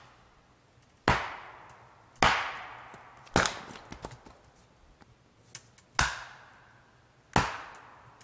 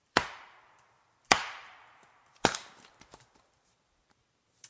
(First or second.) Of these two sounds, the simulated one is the second